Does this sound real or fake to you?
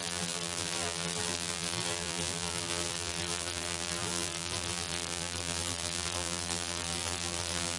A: fake